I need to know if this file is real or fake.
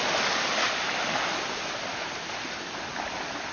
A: real